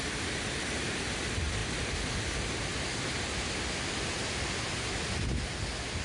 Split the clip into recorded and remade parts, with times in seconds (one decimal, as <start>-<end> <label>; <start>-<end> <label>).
0.0-6.0 recorded